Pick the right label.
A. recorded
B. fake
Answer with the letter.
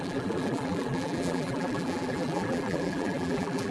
B